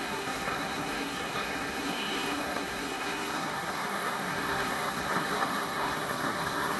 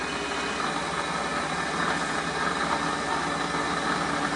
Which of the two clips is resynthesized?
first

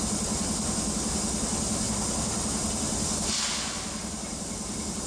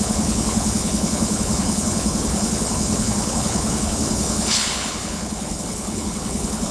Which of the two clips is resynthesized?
second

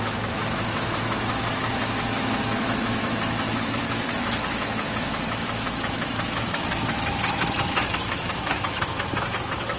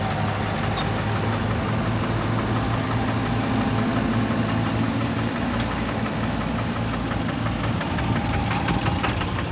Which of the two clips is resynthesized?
first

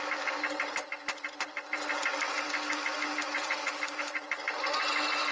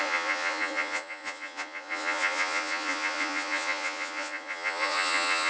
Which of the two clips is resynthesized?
second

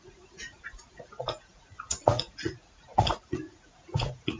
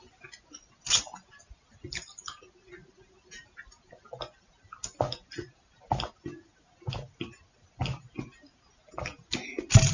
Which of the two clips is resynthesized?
first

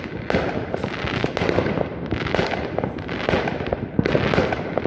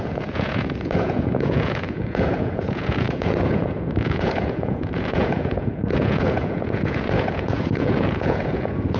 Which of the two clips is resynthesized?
second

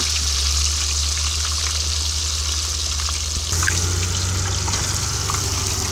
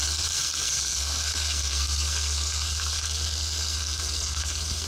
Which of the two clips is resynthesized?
second